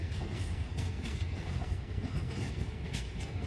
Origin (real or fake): fake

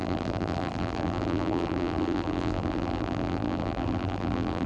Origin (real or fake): fake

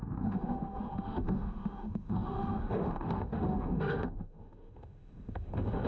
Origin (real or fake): fake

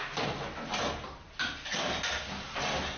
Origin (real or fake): real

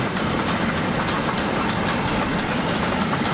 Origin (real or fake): real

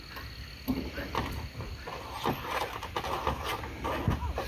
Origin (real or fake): real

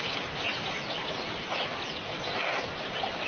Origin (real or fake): real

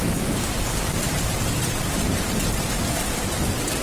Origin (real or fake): real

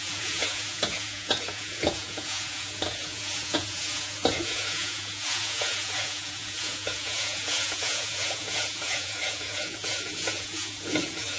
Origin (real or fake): fake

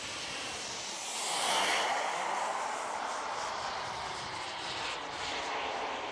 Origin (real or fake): fake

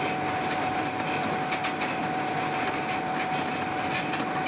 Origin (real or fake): real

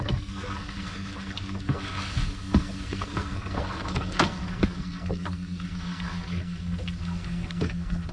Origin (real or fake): fake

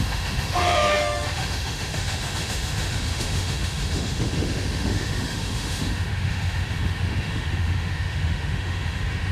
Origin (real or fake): fake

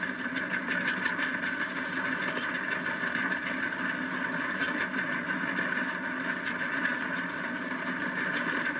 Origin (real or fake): real